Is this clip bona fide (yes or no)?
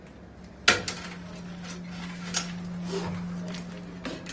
yes